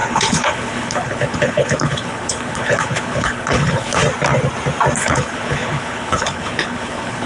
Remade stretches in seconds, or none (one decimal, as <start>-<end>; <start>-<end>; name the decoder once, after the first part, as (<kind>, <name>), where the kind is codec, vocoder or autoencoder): 0.0-4.0 (codec, HILCodec); 5.0-7.3

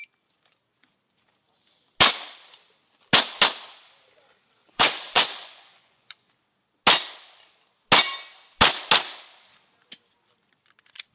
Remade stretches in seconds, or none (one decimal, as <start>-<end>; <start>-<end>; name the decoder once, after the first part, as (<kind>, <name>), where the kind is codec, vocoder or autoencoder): 4.6-6.3 (vocoder, Vocos)

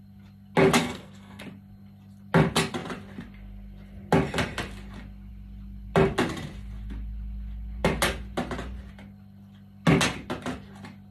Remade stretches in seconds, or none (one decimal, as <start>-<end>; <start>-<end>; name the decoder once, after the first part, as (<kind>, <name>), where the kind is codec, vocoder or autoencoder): 0.8-1.4 (codec, SNAC)

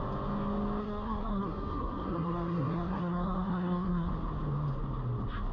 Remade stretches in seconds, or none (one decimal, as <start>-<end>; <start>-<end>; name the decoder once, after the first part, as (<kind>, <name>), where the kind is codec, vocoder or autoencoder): 0.8-4.1 (codec, SNAC)

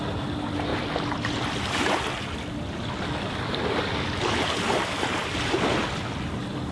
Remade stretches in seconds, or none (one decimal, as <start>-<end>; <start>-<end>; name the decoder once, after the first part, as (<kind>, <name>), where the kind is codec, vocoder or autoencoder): none

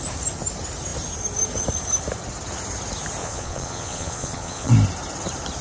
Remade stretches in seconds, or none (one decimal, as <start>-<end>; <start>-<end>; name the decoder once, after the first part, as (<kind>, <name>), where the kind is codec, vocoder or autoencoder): 3.2-4.7 (vocoder, Vocos)

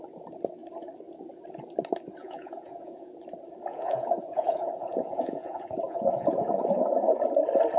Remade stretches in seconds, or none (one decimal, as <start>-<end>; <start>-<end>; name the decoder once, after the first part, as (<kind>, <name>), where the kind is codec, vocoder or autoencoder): 2.2-3.1 (vocoder, Vocos); 3.7-7.1